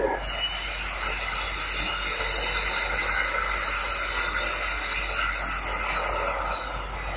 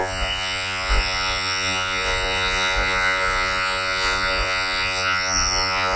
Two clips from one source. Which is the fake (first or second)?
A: second